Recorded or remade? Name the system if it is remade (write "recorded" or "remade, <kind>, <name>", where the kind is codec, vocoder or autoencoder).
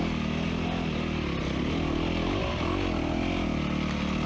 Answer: recorded